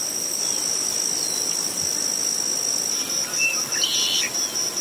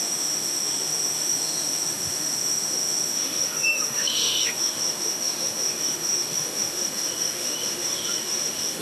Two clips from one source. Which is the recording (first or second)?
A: first